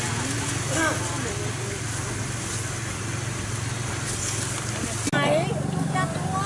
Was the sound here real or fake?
real